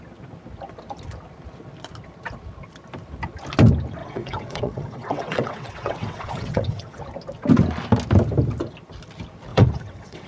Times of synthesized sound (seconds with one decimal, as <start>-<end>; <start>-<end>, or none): 4.0-7.0; 9.5-10.3